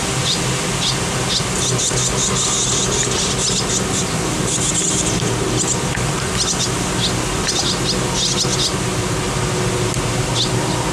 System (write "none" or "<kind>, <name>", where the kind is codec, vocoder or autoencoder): none